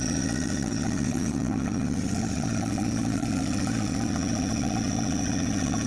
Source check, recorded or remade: remade